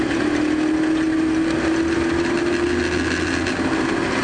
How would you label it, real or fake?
real